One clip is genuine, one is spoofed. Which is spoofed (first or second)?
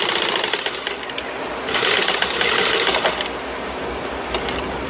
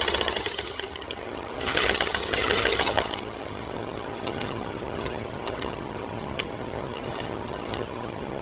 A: second